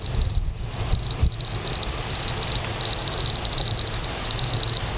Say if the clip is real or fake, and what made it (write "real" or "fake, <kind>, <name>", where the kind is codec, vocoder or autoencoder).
real